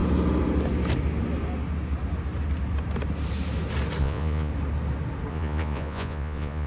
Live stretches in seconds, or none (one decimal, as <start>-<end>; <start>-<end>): 0.0-4.0; 4.5-5.3

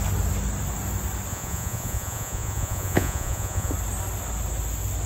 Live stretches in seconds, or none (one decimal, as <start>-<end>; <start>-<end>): 0.0-1.3; 3.7-5.1

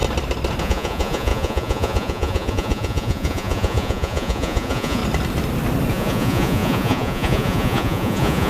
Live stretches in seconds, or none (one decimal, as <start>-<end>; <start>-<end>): 0.0-0.6; 5.0-5.9

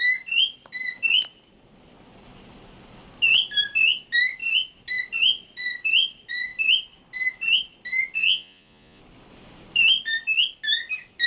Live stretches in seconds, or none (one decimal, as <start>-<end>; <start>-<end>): 0.0-8.2; 9.0-11.3

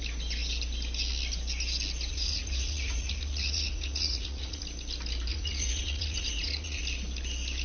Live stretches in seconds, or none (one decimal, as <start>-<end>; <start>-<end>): 0.0-2.1; 4.6-5.3; 6.8-7.6

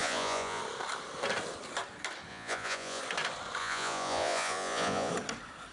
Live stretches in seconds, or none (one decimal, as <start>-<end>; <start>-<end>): 0.6-2.3; 3.0-3.6; 5.1-5.7

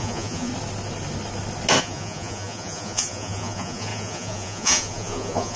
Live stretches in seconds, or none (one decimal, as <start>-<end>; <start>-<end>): 0.5-1.8